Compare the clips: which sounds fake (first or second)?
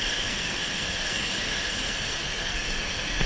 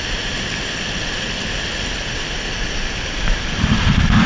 first